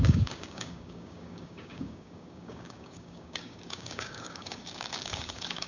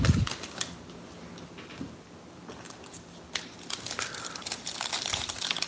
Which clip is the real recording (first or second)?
second